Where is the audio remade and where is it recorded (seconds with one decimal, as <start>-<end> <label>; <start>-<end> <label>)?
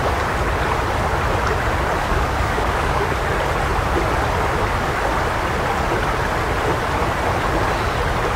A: 0.0-2.0 recorded; 2.0-3.2 remade; 3.2-8.4 recorded